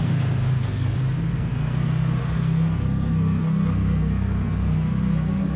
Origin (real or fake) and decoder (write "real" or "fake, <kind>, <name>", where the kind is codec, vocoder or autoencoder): fake, codec, SNAC